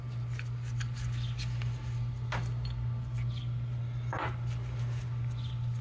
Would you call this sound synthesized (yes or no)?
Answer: no